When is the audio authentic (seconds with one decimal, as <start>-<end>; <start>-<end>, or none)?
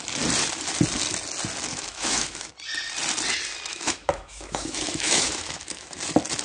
0.0-1.7; 2.5-3.7; 6.0-6.4